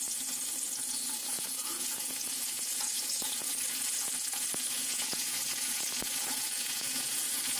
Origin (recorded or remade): remade